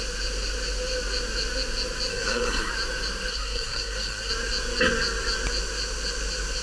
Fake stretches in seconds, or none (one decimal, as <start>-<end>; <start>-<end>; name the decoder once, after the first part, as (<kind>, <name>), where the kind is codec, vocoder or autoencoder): 2.1-2.7 (codec, SNAC); 3.3-4.3